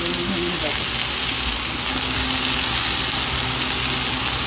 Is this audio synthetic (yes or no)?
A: no